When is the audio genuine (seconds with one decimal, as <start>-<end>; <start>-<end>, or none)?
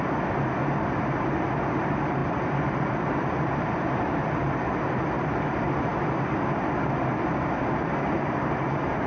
0.6-1.2; 5.9-7.8